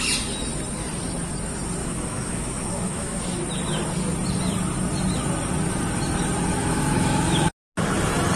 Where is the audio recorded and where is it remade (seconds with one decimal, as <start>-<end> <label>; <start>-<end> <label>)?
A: 0.0-1.8 recorded; 1.8-3.2 remade; 3.2-6.6 recorded; 6.6-7.5 remade; 7.5-8.4 recorded